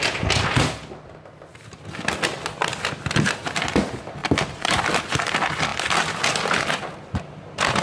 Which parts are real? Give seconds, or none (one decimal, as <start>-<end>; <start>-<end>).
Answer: 0.0-4.2; 4.8-7.8